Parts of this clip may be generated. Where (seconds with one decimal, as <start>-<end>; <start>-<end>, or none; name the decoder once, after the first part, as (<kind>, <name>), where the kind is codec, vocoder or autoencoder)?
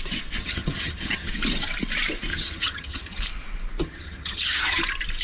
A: 0.4-1.3 (vocoder, HiFi-GAN); 2.3-3.2; 3.8-4.8